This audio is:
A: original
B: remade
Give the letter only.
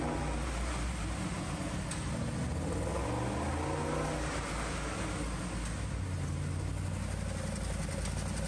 A